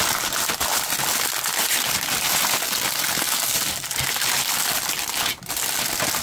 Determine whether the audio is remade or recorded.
recorded